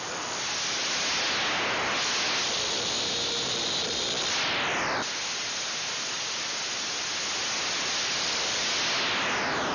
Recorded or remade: recorded